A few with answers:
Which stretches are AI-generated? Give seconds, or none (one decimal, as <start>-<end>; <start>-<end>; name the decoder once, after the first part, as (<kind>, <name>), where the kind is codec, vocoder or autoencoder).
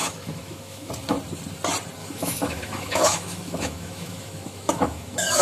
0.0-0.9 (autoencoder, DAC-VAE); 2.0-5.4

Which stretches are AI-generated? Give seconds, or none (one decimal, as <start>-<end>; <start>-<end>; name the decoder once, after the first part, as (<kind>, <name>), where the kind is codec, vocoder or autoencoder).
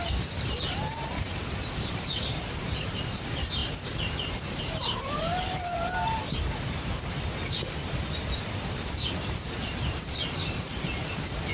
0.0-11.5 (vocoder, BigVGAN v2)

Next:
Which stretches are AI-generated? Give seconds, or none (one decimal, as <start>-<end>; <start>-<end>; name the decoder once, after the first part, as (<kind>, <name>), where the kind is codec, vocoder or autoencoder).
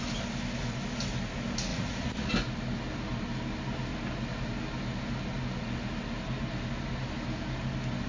1.7-2.3 (vocoder, Vocos)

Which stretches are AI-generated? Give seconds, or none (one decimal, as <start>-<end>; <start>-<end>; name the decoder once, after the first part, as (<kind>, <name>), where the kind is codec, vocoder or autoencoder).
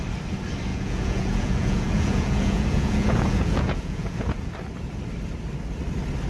0.7-4.5 (vocoder, Vocos)